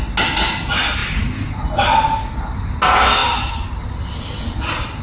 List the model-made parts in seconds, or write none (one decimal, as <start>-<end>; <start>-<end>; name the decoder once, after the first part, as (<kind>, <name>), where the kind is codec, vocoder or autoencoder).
1.0-2.4 (vocoder, BigVGAN v2)